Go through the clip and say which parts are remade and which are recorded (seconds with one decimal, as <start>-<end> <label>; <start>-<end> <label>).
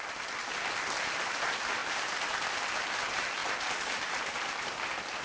0.0-5.2 recorded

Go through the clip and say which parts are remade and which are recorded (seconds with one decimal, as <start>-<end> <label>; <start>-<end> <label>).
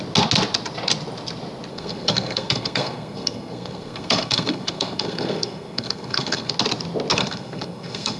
0.0-1.7 recorded; 1.7-6.5 remade; 6.5-7.1 recorded; 7.1-8.2 remade